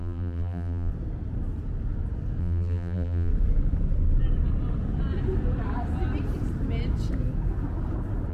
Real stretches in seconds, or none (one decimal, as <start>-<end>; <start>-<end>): 0.9-2.4; 3.3-8.3